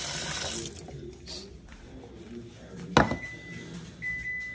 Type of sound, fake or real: real